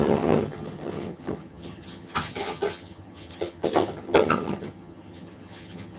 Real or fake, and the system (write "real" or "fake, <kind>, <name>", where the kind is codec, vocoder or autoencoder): fake, vocoder, HiFi-GAN